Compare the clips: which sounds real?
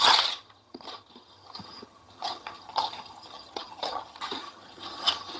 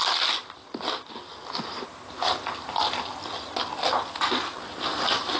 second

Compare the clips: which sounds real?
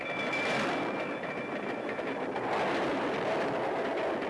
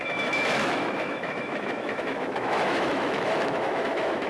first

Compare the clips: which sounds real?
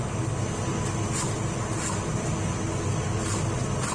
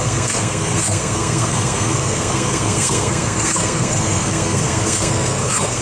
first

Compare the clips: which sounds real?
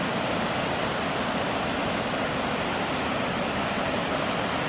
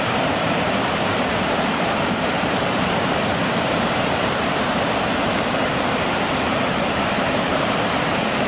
first